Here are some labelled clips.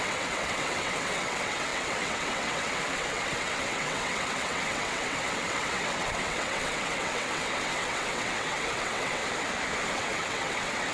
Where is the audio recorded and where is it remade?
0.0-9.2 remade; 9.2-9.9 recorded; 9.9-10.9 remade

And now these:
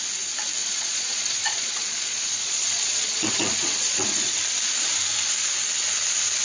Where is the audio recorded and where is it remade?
0.0-0.6 recorded; 0.6-4.4 remade; 4.4-6.4 recorded

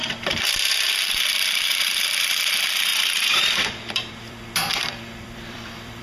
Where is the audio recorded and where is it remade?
0.0-2.9 remade; 2.9-3.7 recorded; 3.7-6.0 remade

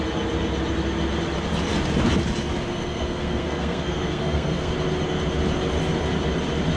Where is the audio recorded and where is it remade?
0.0-2.7 recorded; 2.7-4.7 remade; 4.7-6.8 recorded

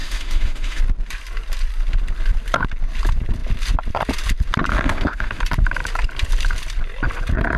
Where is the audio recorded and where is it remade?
0.0-0.8 remade; 0.8-4.7 recorded; 4.7-5.4 remade; 5.4-7.6 recorded

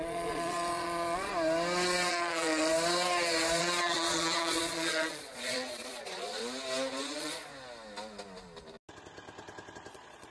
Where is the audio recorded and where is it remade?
0.0-1.3 remade; 1.3-2.1 recorded; 2.1-2.7 remade; 2.7-3.6 recorded; 3.6-6.4 remade; 6.4-7.0 recorded; 7.0-7.5 remade; 7.5-9.9 recorded; 9.9-10.3 remade

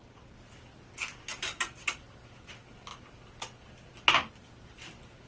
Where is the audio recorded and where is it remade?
0.0-5.3 recorded